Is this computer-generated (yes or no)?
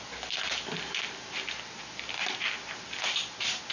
no